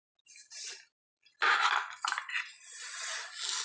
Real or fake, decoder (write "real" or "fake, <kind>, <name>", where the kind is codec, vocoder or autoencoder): real